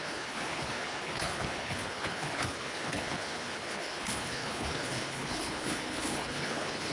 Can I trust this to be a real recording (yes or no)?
no